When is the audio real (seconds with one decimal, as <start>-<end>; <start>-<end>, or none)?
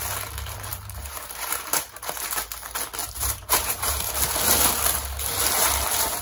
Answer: 0.0-0.7; 2.4-3.0; 4.1-6.2